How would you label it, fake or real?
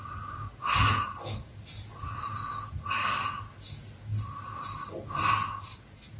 real